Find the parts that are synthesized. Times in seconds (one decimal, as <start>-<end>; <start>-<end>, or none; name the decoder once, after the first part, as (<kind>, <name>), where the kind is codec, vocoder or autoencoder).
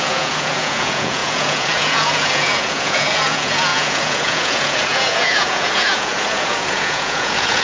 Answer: 0.0-7.6 (vocoder, Vocos)